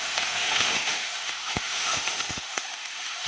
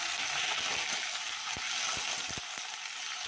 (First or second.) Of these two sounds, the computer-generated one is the first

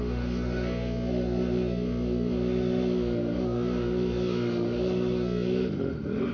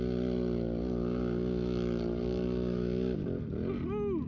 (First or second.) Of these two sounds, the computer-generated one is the first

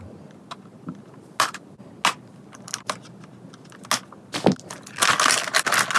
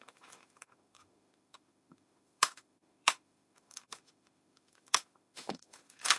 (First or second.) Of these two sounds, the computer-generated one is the second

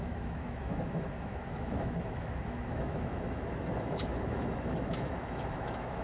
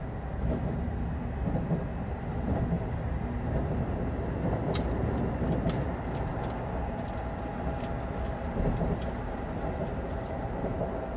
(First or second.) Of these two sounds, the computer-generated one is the first